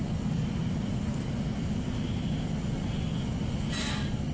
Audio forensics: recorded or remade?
recorded